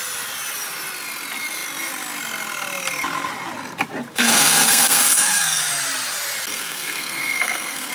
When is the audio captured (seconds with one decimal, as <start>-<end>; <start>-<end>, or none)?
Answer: 0.0-4.1; 5.6-6.5

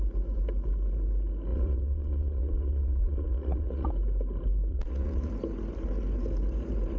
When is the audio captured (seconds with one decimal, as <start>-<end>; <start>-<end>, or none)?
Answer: 0.0-1.5; 3.9-4.7; 5.3-7.0

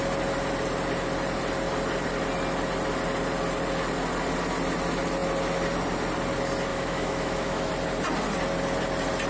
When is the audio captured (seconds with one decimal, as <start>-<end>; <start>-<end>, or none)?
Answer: 0.0-6.7; 7.7-9.3

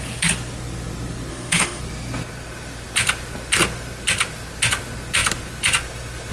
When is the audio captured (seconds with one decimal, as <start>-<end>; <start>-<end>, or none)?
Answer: 0.0-1.3; 1.8-6.3

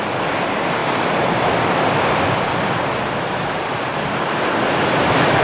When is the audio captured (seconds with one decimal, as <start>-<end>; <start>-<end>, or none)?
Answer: 0.0-0.8; 4.0-5.4

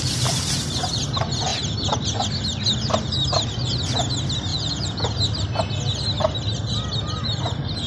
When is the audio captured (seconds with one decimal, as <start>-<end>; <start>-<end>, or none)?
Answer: 0.0-4.5; 5.1-7.9

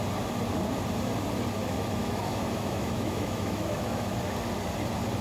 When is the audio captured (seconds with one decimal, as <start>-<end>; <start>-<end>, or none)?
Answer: 0.0-1.6; 4.1-5.2

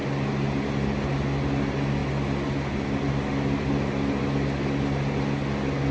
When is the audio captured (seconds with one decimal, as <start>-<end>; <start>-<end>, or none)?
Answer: 0.0-5.9